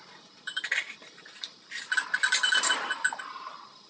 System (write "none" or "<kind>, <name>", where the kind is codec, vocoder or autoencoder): vocoder, BigVGAN v2